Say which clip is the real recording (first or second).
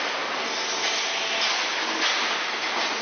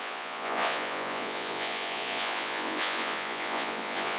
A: first